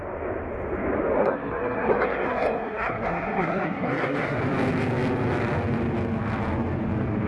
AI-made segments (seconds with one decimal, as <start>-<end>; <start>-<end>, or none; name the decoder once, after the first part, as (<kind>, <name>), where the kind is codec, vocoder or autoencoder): 1.2-4.4 (codec, SNAC)